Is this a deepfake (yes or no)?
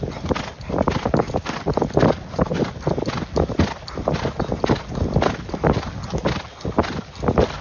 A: no